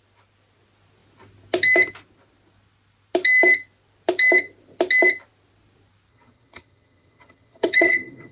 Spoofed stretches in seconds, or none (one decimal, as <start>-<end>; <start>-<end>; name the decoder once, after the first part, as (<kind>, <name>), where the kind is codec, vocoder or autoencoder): 6.1-8.3 (vocoder, HiFi-GAN)